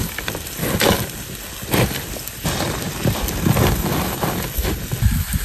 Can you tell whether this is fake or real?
real